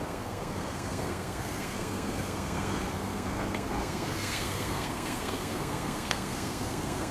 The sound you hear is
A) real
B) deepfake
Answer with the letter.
B